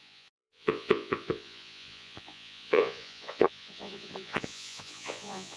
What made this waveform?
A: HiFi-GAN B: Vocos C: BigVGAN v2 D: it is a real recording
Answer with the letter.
B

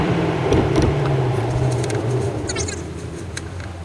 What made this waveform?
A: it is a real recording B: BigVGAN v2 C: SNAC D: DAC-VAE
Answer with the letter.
B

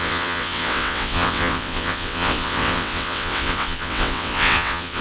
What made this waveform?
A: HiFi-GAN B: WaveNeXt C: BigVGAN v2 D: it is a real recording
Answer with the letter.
B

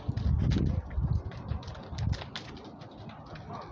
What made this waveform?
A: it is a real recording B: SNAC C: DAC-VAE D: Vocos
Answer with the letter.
A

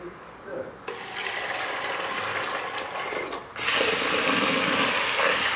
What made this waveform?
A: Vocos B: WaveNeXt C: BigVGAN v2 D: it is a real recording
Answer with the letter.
D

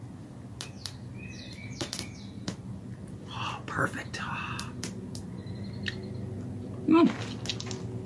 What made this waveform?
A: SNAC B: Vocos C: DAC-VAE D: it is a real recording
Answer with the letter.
D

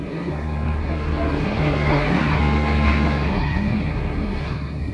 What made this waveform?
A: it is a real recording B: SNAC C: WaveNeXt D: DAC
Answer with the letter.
B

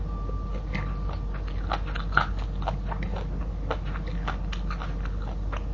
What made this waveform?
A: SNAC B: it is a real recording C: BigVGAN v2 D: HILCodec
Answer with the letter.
B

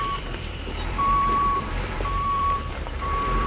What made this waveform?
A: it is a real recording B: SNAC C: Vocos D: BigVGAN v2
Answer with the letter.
D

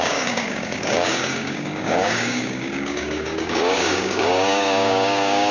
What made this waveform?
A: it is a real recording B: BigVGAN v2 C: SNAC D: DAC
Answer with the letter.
D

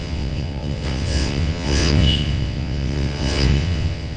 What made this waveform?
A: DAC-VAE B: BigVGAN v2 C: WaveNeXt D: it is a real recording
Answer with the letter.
C